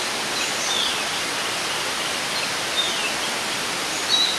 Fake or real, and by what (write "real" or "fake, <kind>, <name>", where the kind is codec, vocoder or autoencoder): real